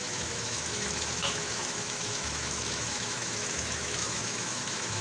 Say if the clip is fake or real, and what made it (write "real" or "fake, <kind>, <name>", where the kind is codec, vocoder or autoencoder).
fake, autoencoder, DAC-VAE